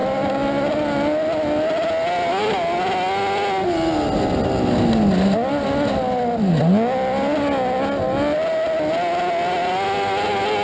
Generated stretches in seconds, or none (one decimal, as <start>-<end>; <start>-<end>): none